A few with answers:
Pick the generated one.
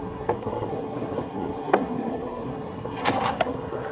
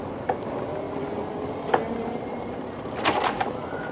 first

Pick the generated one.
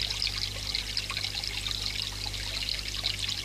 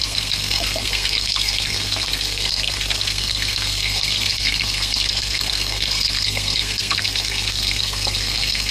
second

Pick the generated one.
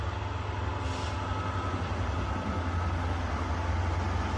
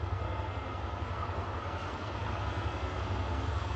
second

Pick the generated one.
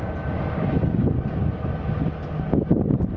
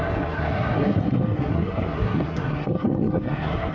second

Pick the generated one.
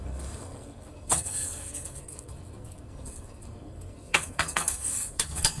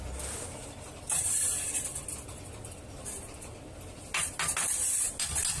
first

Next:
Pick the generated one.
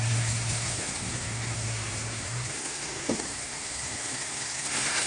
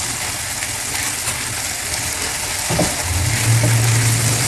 first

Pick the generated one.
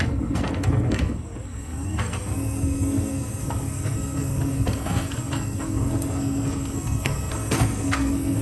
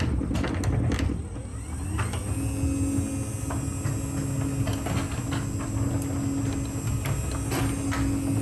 first